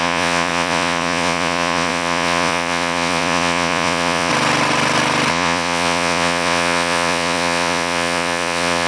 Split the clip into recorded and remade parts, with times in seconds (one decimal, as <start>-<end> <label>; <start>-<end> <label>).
0.0-4.3 remade; 4.3-5.3 recorded; 5.3-8.9 remade